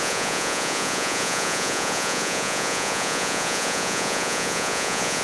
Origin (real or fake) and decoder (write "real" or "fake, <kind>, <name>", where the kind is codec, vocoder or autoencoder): fake, vocoder, Vocos